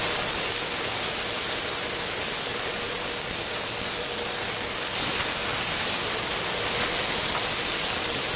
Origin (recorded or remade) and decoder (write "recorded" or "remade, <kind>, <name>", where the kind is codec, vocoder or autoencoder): recorded